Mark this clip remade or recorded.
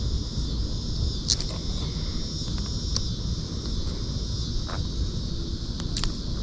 recorded